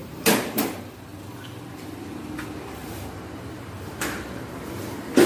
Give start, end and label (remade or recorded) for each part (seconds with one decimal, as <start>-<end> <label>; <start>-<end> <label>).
0.0-0.6 remade; 0.6-2.8 recorded; 2.8-4.7 remade; 4.7-5.3 recorded